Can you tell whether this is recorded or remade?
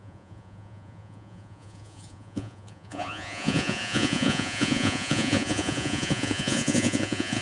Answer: remade